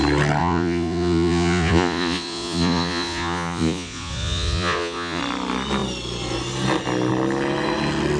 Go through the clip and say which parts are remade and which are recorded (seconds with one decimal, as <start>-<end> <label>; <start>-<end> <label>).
0.0-0.4 recorded; 0.4-5.2 remade; 5.2-8.2 recorded